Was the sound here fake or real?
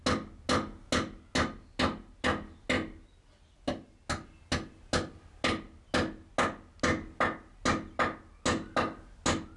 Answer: real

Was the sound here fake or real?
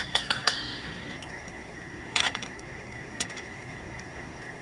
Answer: fake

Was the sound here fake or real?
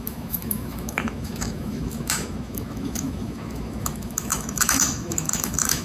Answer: fake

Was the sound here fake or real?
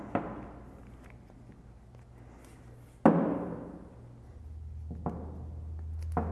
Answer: real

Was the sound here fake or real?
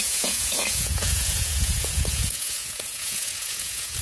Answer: fake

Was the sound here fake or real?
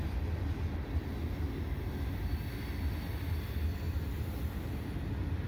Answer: real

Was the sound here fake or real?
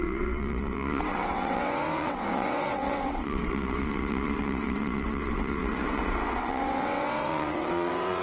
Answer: fake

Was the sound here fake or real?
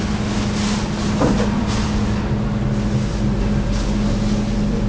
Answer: real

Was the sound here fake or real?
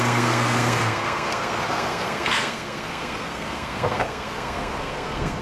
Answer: fake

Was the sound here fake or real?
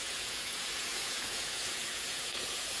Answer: fake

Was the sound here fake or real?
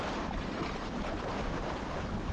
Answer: fake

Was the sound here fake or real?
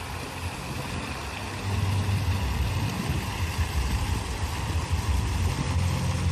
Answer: real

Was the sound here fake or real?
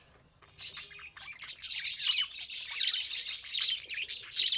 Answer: real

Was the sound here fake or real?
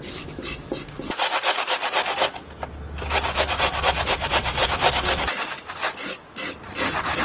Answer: real